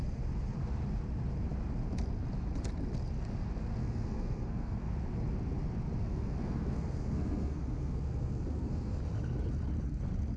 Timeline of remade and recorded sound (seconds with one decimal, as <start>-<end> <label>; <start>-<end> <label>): 0.0-3.8 recorded; 3.8-4.9 remade; 4.9-6.0 recorded; 6.0-9.0 remade; 9.0-10.4 recorded